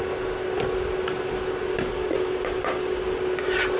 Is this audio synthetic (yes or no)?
no